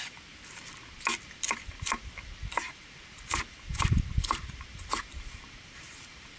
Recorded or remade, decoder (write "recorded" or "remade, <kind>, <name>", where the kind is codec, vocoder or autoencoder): remade, vocoder, BigVGAN v2